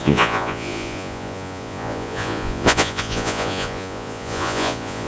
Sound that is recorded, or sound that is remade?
remade